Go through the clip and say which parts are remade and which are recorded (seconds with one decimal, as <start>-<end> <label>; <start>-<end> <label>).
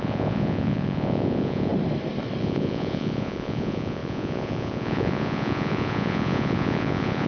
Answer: 0.0-1.7 remade; 1.7-2.4 recorded; 2.4-7.3 remade